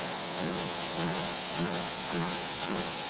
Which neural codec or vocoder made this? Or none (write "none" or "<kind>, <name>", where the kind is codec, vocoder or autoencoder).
vocoder, Vocos